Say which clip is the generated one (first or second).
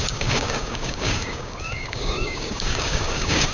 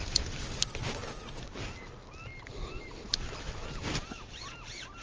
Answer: first